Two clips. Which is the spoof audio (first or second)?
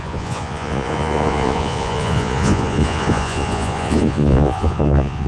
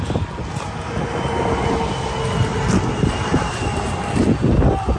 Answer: first